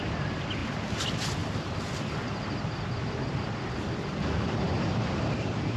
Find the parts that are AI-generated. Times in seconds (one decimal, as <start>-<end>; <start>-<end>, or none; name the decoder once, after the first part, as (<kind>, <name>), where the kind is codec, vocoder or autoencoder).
none